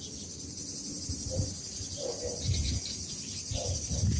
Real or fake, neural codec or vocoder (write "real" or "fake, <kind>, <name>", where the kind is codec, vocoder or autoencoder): real